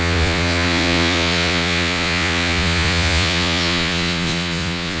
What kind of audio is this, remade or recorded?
remade